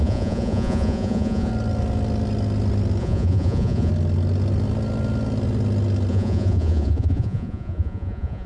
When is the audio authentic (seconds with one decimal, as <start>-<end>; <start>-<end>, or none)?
1.5-3.0; 3.9-6.1